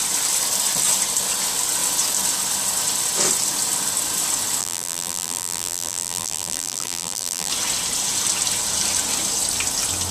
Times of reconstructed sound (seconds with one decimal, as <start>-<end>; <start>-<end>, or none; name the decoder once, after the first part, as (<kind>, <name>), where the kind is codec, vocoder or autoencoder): 4.6-7.5 (vocoder, BigVGAN v2)